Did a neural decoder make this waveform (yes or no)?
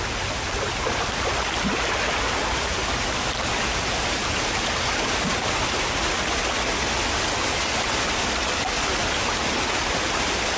no